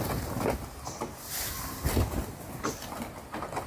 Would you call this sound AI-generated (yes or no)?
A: no